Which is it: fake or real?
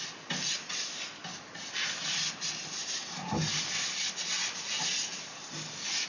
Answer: real